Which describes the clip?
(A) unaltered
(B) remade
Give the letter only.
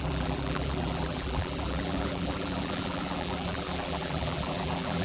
B